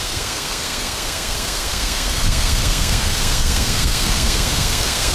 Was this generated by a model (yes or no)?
yes